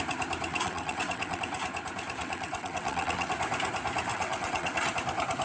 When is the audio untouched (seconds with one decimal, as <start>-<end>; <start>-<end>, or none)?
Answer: 0.0-0.5; 1.4-2.2; 3.3-4.1; 4.9-5.4